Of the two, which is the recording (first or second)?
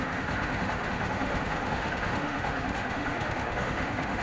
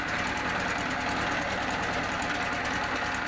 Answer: second